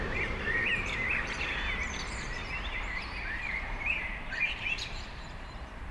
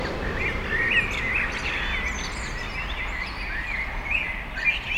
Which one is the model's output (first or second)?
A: first